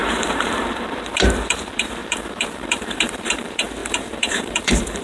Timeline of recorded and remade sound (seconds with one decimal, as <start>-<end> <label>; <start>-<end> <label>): 0.0-5.0 remade